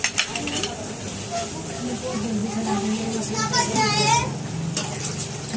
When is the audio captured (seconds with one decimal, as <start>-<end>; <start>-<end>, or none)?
0.0-5.6